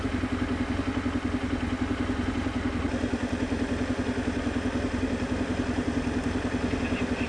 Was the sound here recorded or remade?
recorded